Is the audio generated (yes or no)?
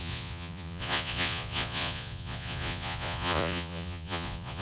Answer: yes